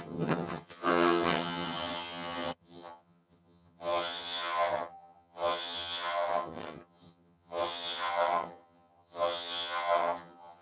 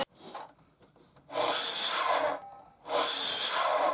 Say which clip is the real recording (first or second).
second